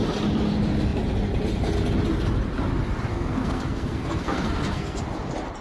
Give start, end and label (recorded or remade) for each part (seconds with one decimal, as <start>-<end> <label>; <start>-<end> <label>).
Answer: 0.0-3.1 recorded; 3.1-5.0 remade; 5.0-5.6 recorded